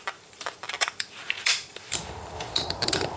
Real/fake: fake